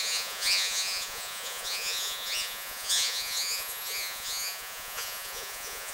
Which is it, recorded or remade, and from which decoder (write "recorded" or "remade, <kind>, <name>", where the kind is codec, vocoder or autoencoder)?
remade, vocoder, Vocos